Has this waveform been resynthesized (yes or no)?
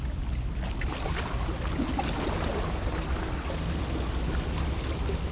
no